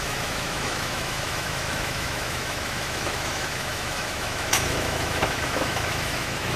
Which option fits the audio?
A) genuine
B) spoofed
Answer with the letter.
B